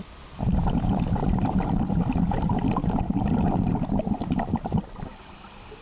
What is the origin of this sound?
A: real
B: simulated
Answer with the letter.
A